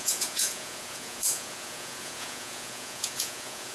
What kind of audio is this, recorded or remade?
remade